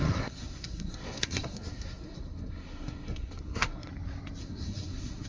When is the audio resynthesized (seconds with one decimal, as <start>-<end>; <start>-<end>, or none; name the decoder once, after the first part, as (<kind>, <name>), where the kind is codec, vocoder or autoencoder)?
0.0-3.9 (codec, SNAC); 4.4-5.3